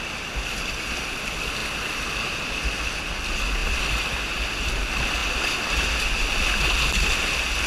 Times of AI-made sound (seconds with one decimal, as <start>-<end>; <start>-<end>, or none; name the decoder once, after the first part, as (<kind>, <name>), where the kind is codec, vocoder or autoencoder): none